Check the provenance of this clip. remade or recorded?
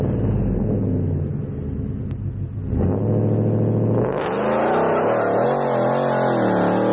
recorded